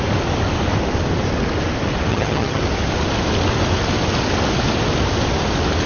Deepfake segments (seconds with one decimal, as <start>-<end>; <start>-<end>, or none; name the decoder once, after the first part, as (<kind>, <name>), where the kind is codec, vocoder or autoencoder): 2.1-2.6 (vocoder, HiFi-GAN)